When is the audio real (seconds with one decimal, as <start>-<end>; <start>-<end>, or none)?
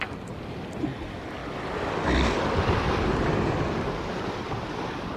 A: 0.0-1.4; 4.5-5.2